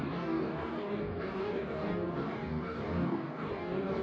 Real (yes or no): no